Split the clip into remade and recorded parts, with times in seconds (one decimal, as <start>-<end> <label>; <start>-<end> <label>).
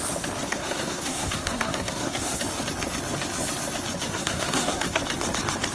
0.0-0.5 recorded; 0.5-2.4 remade; 2.4-4.0 recorded; 4.0-5.0 remade; 5.0-5.7 recorded